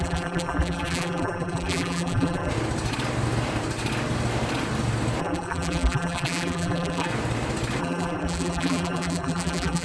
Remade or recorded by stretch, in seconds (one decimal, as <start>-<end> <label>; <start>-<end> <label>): 0.0-2.5 remade; 2.5-5.2 recorded; 5.2-7.1 remade; 7.1-7.8 recorded; 7.8-9.8 remade

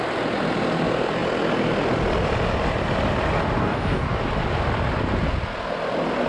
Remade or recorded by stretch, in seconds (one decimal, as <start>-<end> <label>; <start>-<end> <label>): 0.0-3.6 recorded; 3.6-4.2 remade; 4.2-6.3 recorded

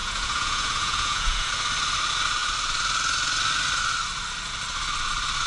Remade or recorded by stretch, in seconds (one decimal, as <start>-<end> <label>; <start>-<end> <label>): 0.0-1.5 remade; 1.5-5.5 recorded

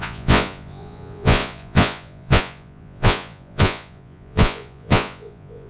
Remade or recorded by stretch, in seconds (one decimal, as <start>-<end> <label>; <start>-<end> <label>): 0.0-5.7 remade

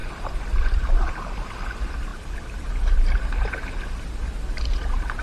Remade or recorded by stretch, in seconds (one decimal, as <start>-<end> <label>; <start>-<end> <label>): 0.0-1.3 remade; 1.3-2.1 recorded; 2.1-3.5 remade; 3.5-5.2 recorded

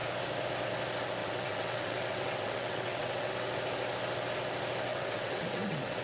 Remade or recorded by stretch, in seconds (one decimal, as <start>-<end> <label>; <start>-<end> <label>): 0.0-1.2 recorded; 1.2-3.3 remade; 3.3-4.9 recorded; 4.9-6.0 remade

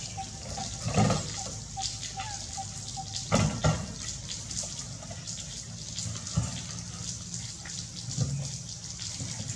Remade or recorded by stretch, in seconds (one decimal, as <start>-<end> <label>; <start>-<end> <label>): 0.0-9.6 recorded

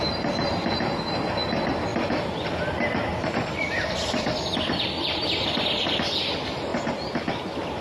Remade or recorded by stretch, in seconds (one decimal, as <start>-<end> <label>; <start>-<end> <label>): 0.0-3.1 recorded; 3.1-3.6 remade; 3.6-7.8 recorded